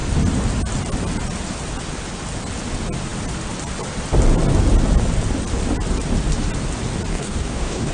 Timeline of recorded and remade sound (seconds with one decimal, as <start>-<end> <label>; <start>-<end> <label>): 0.0-7.1 recorded; 7.1-7.9 remade